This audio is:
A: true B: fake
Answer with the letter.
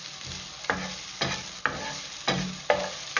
A